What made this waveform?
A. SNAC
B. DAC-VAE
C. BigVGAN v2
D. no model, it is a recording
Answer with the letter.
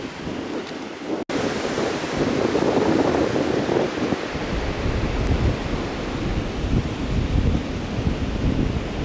D